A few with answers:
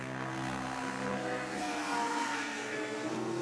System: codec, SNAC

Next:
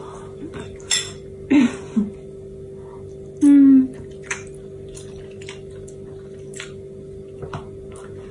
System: none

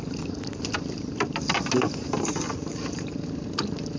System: none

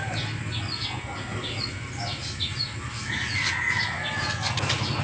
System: none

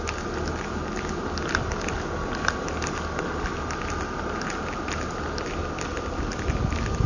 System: none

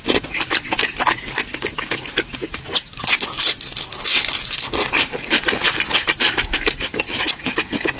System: none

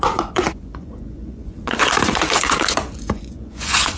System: vocoder, Vocos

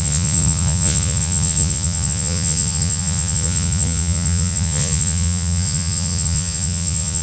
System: vocoder, Vocos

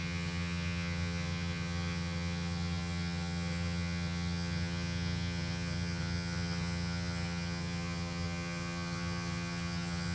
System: vocoder, HiFi-GAN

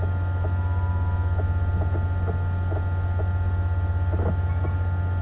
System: none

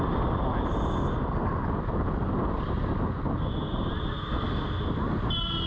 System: none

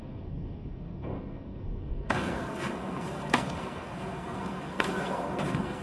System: codec, SNAC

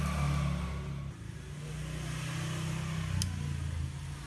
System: none